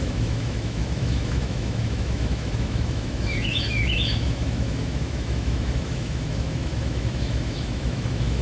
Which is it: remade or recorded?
remade